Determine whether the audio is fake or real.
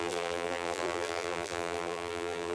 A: fake